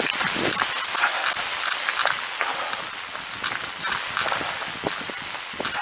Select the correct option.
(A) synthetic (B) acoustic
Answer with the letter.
B